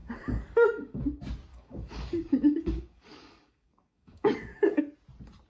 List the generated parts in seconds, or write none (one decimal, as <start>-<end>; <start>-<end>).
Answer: 0.0-1.0; 1.5-4.8